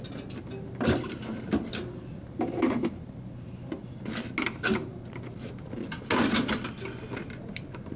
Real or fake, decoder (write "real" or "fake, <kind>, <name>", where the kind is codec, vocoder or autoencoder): real